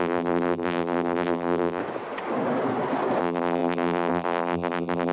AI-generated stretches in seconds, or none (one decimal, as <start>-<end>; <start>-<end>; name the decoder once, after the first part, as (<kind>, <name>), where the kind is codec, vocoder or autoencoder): 0.0-1.8 (vocoder, BigVGAN v2); 3.2-5.1

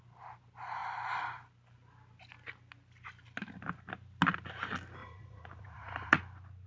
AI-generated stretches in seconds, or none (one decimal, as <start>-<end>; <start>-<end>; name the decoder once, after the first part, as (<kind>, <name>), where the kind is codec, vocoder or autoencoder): 5.0-6.2 (vocoder, Vocos)

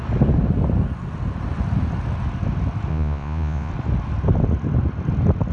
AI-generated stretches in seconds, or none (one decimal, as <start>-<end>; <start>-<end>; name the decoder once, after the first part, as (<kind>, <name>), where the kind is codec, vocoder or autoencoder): 2.9-3.7 (vocoder, Vocos)